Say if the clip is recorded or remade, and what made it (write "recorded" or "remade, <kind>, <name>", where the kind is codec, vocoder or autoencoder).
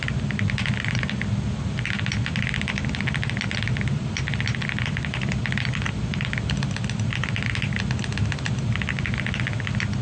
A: recorded